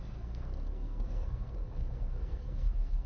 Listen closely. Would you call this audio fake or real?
fake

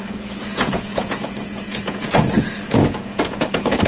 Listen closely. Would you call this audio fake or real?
fake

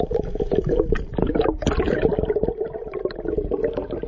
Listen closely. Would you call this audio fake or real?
real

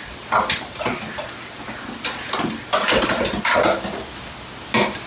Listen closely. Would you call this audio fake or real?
real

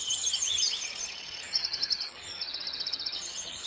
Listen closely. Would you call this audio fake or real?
fake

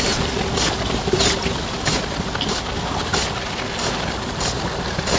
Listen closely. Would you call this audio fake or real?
real